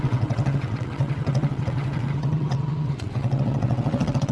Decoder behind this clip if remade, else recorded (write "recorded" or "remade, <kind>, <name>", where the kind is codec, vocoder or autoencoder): remade, vocoder, WaveNeXt